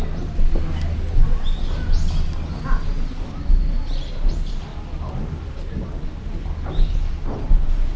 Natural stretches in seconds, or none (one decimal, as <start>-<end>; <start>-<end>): 0.0-8.0